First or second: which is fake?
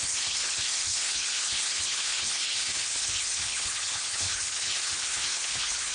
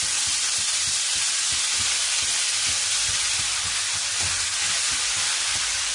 first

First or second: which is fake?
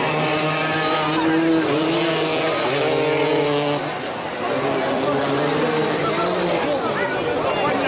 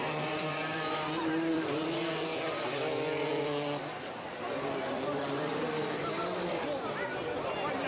second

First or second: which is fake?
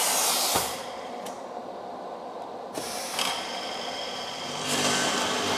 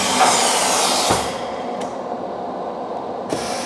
first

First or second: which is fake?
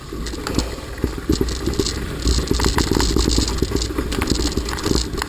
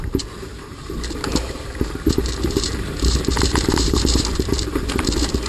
second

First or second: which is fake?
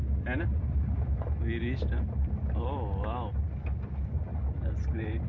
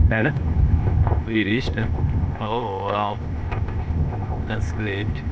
second